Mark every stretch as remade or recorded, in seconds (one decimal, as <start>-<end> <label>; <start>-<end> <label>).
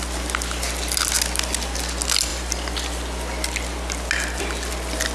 0.0-5.1 recorded